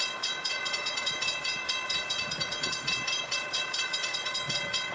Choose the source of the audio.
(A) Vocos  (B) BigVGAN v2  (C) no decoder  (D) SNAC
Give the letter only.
A